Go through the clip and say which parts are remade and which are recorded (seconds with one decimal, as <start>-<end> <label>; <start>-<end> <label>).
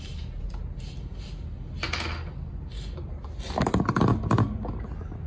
0.0-5.3 recorded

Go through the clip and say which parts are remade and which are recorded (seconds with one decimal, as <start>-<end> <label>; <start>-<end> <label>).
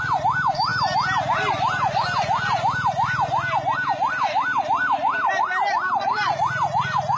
0.0-7.2 recorded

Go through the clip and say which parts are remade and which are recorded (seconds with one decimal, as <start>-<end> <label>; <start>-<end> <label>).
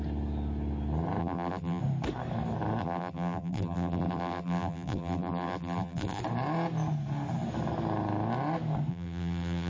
0.0-1.2 recorded; 1.2-1.8 remade; 1.8-2.8 recorded; 2.8-6.2 remade; 6.2-8.9 recorded; 8.9-9.7 remade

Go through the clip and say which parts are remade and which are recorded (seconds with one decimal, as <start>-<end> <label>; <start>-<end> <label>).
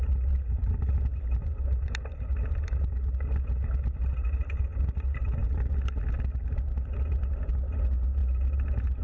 0.0-1.1 recorded; 1.1-2.9 remade; 2.9-4.0 recorded; 4.0-4.6 remade; 4.6-9.0 recorded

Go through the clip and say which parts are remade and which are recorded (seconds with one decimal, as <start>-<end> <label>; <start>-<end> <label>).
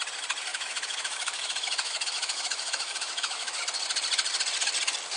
0.0-0.5 recorded; 0.5-3.6 remade; 3.6-5.2 recorded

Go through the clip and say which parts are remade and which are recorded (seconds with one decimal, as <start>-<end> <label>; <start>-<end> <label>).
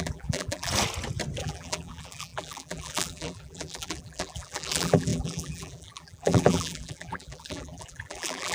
0.0-0.7 remade; 0.7-1.4 recorded; 1.4-8.5 remade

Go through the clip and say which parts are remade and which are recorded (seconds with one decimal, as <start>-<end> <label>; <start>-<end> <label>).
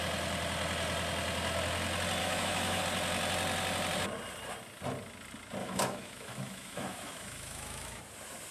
0.0-2.2 recorded; 2.2-2.8 remade; 2.8-5.6 recorded; 5.6-8.0 remade; 8.0-8.5 recorded